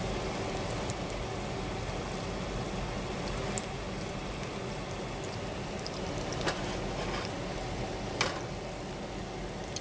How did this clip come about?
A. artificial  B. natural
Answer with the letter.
B